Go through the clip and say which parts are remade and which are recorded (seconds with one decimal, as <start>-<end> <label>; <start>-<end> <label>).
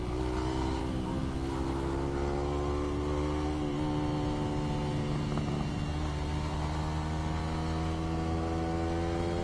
0.0-9.4 recorded